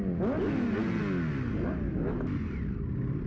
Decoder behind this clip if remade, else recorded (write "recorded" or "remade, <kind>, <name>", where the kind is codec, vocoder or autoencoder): recorded